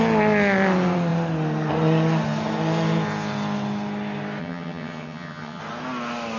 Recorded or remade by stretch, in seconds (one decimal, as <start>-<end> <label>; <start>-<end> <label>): 0.0-4.4 recorded; 4.4-5.6 remade; 5.6-6.4 recorded